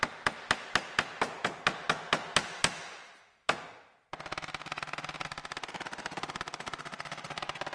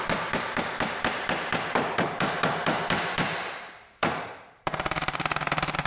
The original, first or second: first